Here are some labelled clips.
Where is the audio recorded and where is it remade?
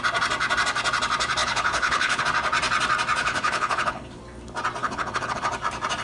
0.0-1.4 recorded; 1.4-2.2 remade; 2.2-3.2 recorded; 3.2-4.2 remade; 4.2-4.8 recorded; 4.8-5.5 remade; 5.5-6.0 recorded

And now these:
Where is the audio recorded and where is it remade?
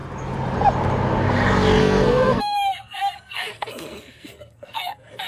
0.0-1.8 recorded; 1.8-5.3 remade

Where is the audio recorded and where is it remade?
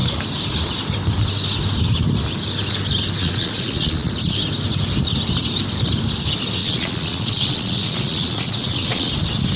0.0-3.2 recorded; 3.2-4.1 remade; 4.1-6.6 recorded; 6.6-9.1 remade; 9.1-9.6 recorded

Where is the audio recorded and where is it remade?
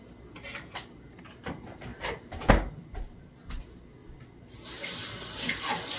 0.0-6.0 recorded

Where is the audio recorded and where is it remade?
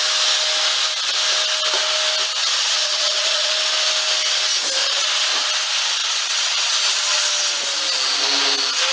0.0-2.4 recorded; 2.4-3.5 remade; 3.5-4.8 recorded; 4.8-5.5 remade; 5.5-6.0 recorded; 6.0-7.2 remade; 7.2-8.9 recorded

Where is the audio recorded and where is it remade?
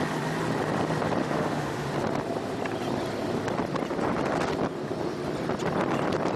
0.0-1.2 recorded; 1.2-1.9 remade; 1.9-6.4 recorded